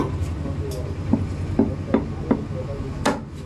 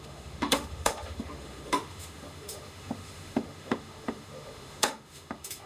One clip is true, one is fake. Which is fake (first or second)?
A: second